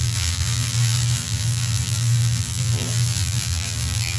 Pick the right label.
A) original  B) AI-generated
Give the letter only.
B